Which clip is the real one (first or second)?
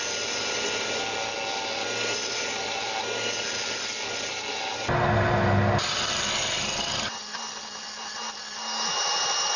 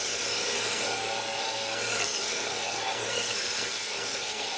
first